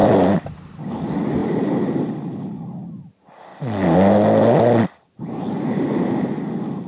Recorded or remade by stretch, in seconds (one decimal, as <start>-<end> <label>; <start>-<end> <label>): 0.0-0.9 remade; 0.9-1.4 recorded; 1.4-2.2 remade; 2.2-6.9 recorded